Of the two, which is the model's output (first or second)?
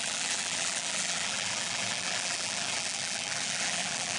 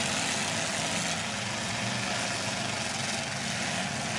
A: first